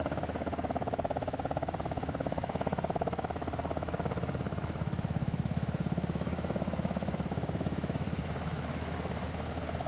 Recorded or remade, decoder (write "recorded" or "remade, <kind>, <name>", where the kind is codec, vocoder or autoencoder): remade, autoencoder, DAC-VAE